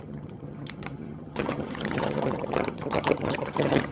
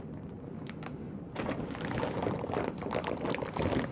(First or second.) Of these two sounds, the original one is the second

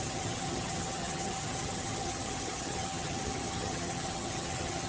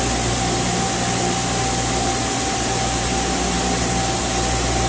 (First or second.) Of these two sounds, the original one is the second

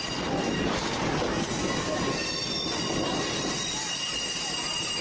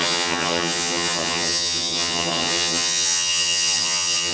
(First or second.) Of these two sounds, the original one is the first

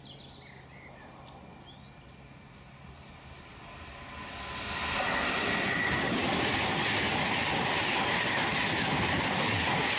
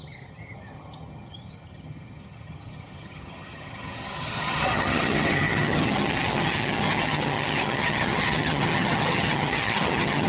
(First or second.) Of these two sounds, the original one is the first